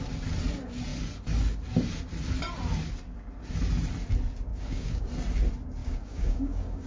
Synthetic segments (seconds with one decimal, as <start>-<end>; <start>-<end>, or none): 4.5-5.1; 5.8-6.9

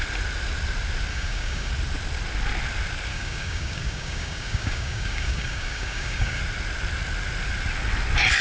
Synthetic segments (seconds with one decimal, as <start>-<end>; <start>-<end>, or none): 1.1-1.7; 3.1-6.4

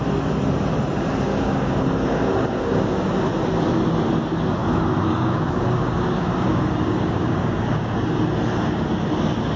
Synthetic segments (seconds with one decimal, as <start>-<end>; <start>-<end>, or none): 1.3-3.1; 4.6-8.2

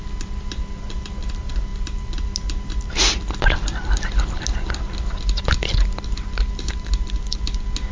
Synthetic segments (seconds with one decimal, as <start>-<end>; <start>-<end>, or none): none

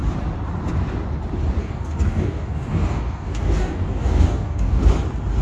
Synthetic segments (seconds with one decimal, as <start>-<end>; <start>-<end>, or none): 1.6-4.8

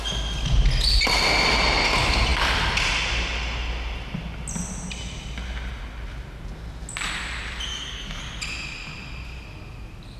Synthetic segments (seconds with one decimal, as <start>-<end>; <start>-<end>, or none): 7.7-8.2

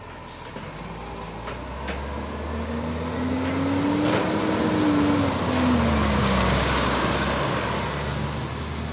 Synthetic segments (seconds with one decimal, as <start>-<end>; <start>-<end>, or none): 6.2-7.1